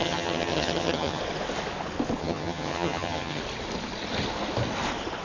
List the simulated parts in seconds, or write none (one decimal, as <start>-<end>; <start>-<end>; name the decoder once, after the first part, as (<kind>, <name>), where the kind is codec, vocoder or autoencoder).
0.0-1.2 (vocoder, HiFi-GAN); 2.2-3.4